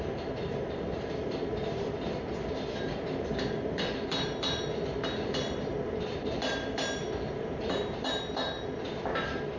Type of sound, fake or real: fake